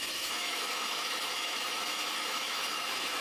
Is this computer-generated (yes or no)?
yes